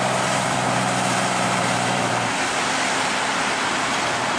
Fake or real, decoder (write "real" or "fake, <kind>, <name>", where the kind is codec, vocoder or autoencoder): fake, vocoder, BigVGAN v2